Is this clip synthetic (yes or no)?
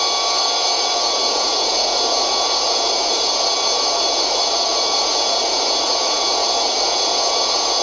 yes